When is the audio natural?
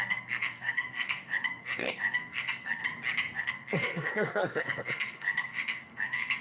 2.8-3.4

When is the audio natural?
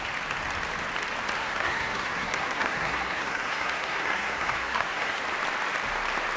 0.0-1.4; 5.2-6.4